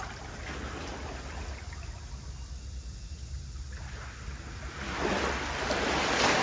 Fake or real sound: real